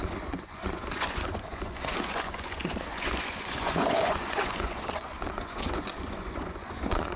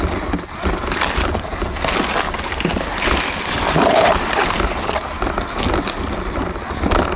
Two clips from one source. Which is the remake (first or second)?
first